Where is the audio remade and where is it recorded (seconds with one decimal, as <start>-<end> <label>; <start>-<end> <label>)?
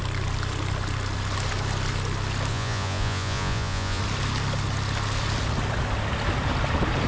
0.0-2.5 recorded; 2.5-4.0 remade; 4.0-7.1 recorded